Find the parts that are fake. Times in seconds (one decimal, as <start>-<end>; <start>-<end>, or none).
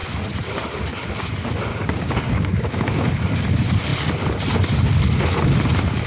1.7-3.1